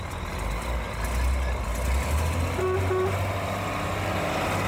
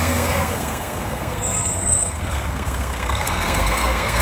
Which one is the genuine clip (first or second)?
first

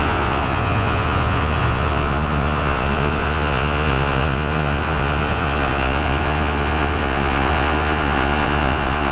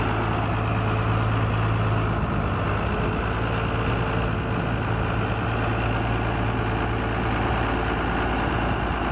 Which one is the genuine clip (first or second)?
second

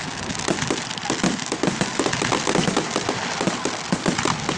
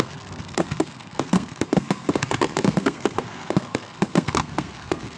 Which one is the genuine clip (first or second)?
first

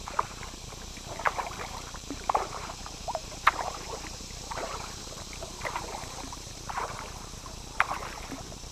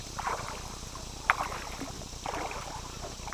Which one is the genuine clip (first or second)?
second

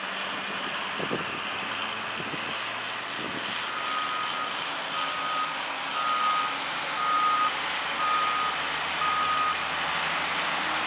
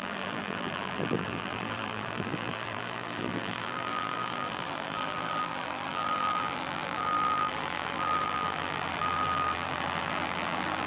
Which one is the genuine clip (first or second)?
first